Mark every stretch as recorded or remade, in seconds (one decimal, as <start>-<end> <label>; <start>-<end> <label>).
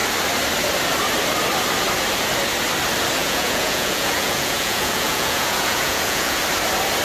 0.0-3.2 recorded; 3.2-6.4 remade; 6.4-7.0 recorded